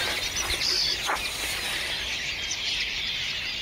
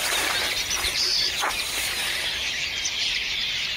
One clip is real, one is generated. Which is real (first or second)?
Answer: first